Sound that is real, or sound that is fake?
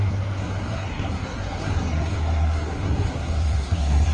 fake